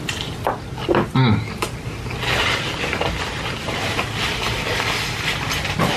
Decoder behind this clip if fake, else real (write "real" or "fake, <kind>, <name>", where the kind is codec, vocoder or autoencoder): real